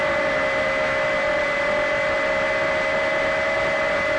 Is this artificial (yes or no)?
no